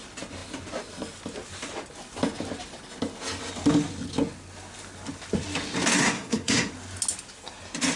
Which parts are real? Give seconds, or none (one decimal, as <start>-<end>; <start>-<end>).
0.0-6.0; 6.7-8.0